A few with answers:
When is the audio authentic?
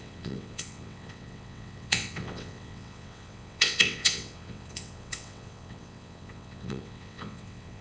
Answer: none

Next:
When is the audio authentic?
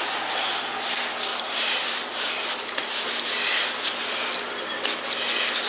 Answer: 0.0-1.3; 3.1-3.6; 4.3-5.7